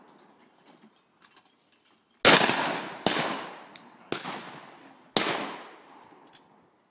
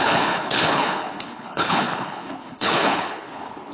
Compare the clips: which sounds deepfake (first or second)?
second